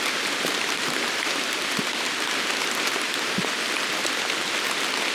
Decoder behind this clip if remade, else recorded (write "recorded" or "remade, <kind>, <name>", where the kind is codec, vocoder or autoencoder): recorded